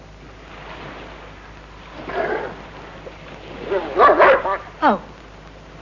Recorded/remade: recorded